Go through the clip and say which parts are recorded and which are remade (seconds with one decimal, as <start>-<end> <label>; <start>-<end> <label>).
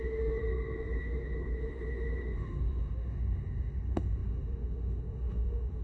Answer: 0.0-0.4 remade; 0.4-1.0 recorded; 1.0-5.8 remade